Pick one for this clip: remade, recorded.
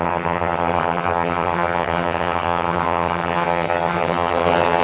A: remade